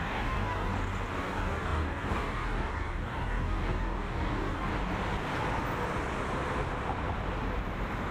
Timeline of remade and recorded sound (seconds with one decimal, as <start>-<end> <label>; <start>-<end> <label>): 0.0-0.7 remade; 0.7-1.2 recorded; 1.2-4.7 remade; 4.7-8.1 recorded